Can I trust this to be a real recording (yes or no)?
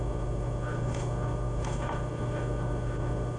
no